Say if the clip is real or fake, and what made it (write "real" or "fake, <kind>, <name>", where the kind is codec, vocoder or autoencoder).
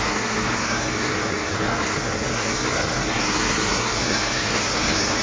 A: fake, codec, SNAC